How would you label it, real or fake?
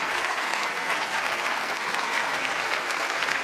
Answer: fake